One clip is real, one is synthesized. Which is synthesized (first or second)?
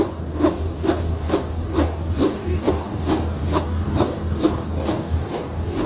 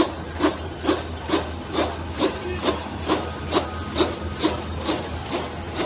first